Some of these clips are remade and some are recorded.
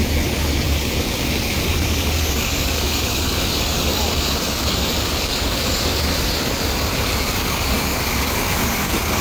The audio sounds remade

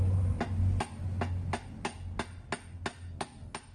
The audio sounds recorded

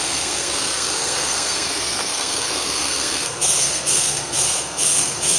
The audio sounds remade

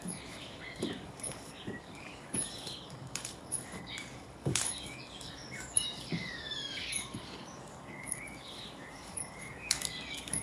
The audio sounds remade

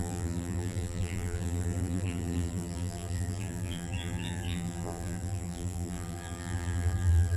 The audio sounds remade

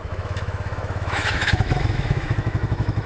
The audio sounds remade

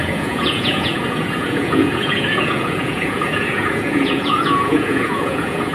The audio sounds remade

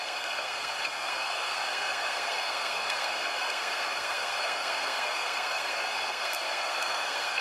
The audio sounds remade